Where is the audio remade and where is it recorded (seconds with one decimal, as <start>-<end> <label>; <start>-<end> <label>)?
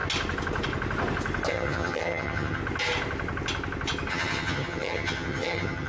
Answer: 0.0-1.5 recorded; 1.5-2.6 remade; 2.6-4.1 recorded; 4.1-5.9 remade